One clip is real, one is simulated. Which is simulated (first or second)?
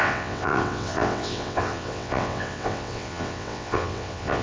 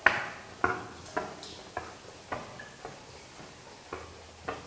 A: first